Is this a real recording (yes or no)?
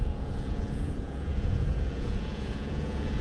no